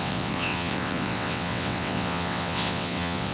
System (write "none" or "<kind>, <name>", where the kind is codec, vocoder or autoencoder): vocoder, WaveNeXt